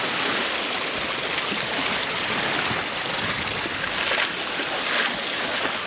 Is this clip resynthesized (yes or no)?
no